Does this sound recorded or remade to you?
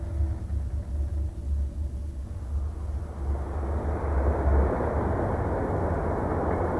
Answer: recorded